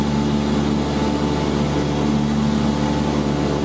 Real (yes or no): yes